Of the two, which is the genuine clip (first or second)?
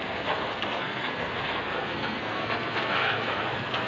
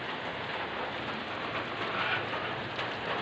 second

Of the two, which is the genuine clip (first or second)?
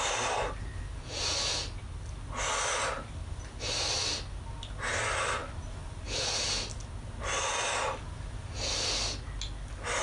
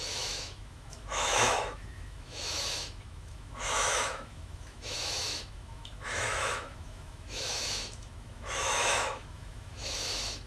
first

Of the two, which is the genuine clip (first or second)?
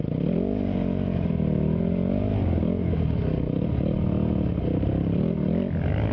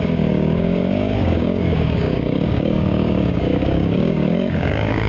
first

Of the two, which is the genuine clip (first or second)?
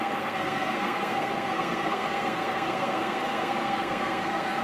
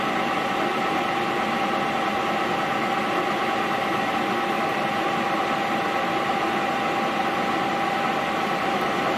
second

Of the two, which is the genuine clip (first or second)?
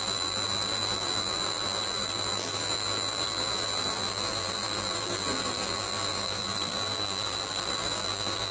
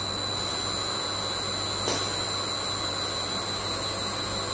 second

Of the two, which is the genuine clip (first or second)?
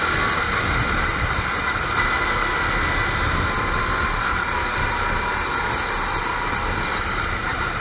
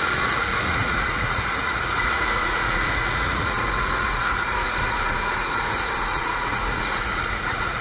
first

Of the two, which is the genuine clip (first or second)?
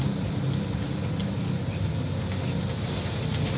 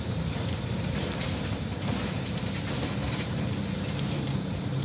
first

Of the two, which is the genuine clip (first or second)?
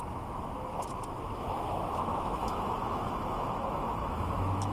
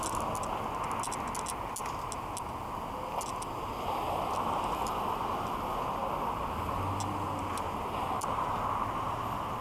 second